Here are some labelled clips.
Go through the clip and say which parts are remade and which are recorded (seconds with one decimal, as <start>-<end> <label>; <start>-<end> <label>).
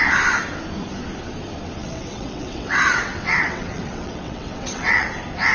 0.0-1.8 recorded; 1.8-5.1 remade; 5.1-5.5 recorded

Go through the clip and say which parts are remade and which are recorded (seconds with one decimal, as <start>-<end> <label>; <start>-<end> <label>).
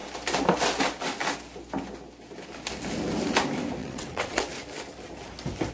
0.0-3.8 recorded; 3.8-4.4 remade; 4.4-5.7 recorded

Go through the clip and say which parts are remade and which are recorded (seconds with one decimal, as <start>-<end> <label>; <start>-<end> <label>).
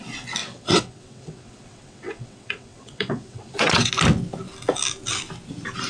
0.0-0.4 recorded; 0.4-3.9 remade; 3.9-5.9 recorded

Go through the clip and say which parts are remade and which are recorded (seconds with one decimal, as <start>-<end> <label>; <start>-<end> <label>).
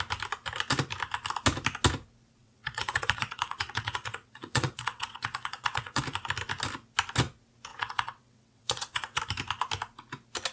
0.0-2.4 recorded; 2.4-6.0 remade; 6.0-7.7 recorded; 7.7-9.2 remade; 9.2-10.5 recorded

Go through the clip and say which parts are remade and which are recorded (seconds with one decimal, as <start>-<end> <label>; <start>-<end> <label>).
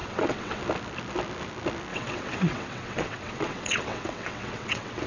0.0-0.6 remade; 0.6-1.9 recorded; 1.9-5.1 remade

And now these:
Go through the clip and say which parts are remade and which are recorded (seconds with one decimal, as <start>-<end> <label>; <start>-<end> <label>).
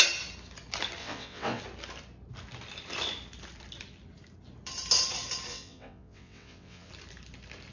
0.0-1.0 recorded; 1.0-1.6 remade; 1.6-5.5 recorded; 5.5-6.9 remade; 6.9-7.7 recorded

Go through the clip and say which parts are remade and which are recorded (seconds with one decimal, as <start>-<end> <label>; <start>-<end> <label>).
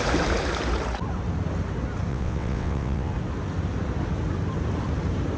0.0-2.1 recorded; 2.1-3.1 remade; 3.1-5.4 recorded